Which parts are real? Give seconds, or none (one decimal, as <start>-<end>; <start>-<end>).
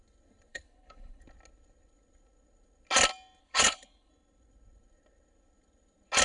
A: 0.0-0.5; 1.2-3.4; 4.1-6.2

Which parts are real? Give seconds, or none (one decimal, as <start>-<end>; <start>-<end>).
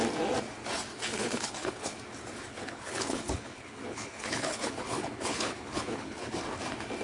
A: 0.0-0.9; 2.0-2.5; 6.4-7.0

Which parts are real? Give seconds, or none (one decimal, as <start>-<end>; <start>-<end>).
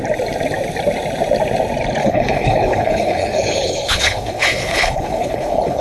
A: 0.0-2.0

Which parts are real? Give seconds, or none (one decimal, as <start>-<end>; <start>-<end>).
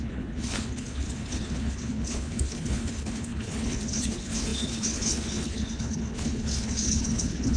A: none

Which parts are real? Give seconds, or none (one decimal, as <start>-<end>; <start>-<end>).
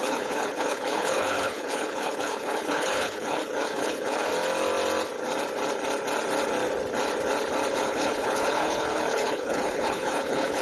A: 4.3-7.7